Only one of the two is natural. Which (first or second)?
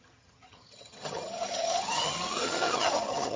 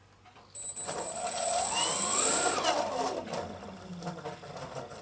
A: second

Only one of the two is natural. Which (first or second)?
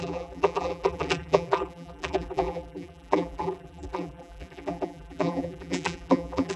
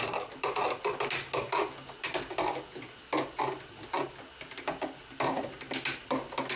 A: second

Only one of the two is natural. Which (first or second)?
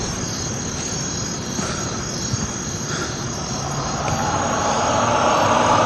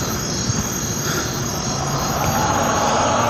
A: second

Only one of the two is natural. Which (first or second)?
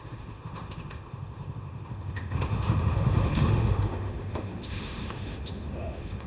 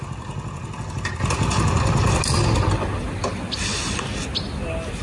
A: second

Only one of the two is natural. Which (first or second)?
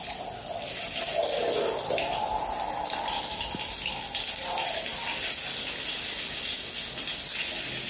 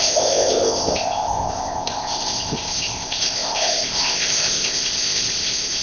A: first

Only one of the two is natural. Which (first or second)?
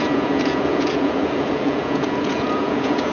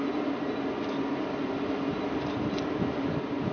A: second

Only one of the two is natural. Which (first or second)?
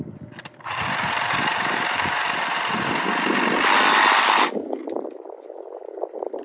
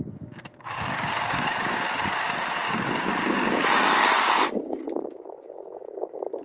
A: first